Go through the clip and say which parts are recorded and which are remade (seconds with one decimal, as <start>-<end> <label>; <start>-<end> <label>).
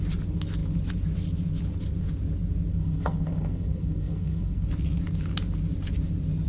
0.0-2.7 recorded; 2.7-4.7 remade; 4.7-6.5 recorded